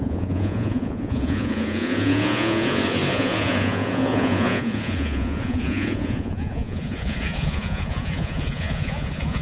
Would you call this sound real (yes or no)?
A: no